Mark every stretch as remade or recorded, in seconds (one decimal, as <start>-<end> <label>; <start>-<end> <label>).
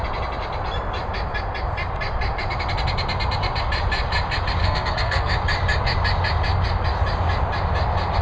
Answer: 0.0-4.6 recorded; 4.6-5.3 remade; 5.3-8.2 recorded